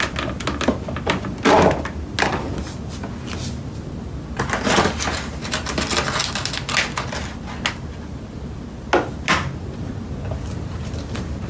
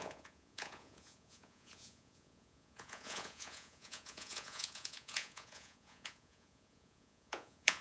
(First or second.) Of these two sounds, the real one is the first